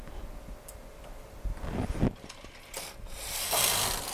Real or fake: real